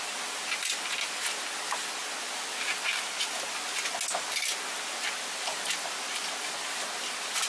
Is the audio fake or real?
real